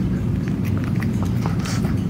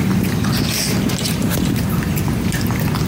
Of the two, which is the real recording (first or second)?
first